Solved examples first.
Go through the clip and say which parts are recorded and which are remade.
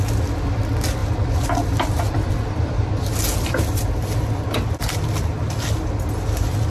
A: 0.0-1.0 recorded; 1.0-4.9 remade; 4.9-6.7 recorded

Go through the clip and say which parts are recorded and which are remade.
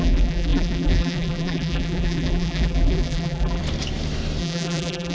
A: 0.0-3.6 remade; 3.6-4.4 recorded; 4.4-5.1 remade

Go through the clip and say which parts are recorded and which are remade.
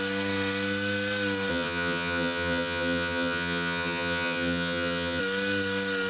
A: 0.0-1.5 recorded; 1.5-5.2 remade; 5.2-6.1 recorded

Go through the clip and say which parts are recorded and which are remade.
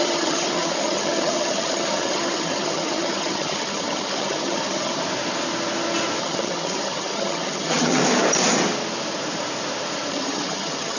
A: 0.0-5.0 remade; 5.0-6.2 recorded; 6.2-8.0 remade; 8.0-10.1 recorded; 10.1-11.0 remade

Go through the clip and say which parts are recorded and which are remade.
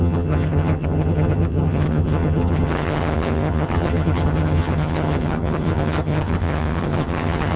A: 0.0-7.6 remade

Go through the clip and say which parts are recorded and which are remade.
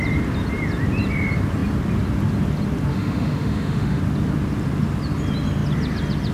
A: 0.0-2.9 recorded; 2.9-4.0 remade; 4.0-6.3 recorded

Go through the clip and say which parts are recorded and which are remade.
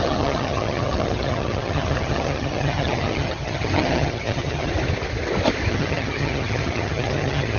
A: 0.0-4.7 remade; 4.7-5.7 recorded; 5.7-7.6 remade